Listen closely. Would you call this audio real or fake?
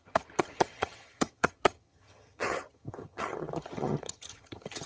fake